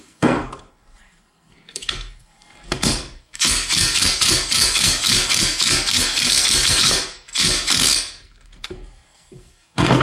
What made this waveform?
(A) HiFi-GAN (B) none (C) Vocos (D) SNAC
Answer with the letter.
D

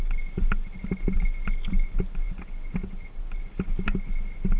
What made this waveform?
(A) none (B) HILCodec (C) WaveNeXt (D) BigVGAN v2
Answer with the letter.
A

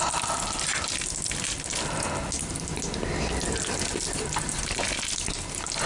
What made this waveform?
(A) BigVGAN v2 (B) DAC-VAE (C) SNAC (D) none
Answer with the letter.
D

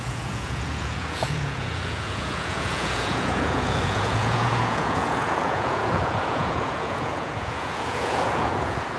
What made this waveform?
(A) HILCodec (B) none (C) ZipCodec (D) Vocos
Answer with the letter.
D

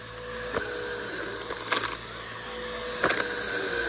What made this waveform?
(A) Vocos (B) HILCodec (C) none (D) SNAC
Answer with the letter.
C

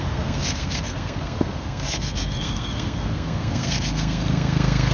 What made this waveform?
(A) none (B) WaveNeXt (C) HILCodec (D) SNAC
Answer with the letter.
D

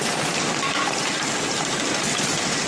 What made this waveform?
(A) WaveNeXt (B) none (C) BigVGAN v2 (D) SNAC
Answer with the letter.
B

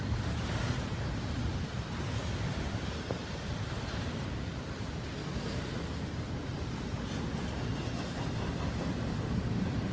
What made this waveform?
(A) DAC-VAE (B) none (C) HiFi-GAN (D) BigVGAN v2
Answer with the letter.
B